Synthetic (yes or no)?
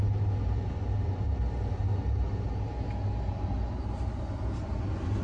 no